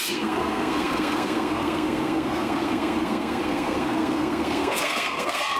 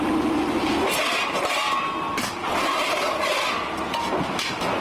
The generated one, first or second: first